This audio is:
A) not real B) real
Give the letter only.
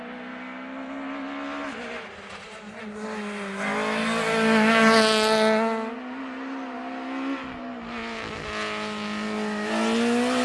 B